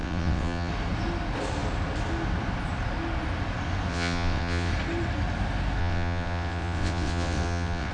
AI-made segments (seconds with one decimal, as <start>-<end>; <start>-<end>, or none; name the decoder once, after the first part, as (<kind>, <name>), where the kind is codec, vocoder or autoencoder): 0.0-0.7 (vocoder, WaveNeXt); 3.9-4.7; 5.8-7.9